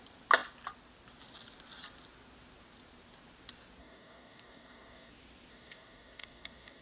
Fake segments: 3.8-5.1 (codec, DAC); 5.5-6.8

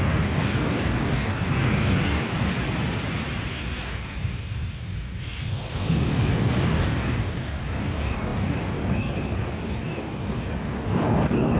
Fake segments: 0.0-2.5 (codec, DAC); 3.5-11.6

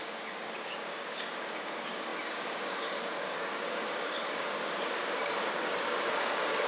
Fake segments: 0.0-6.7 (codec, DAC)